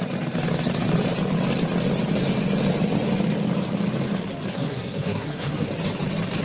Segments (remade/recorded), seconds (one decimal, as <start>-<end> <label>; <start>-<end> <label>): 0.0-4.5 recorded; 4.5-5.7 remade; 5.7-6.4 recorded